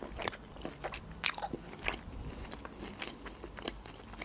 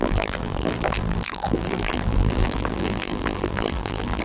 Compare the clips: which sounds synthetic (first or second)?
second